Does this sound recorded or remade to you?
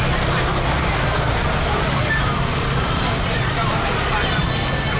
recorded